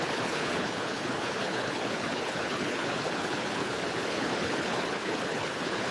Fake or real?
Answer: fake